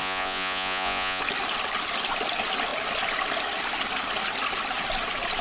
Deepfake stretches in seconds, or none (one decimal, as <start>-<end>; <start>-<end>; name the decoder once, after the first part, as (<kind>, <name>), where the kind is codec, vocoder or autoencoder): 0.0-1.2 (vocoder, Vocos)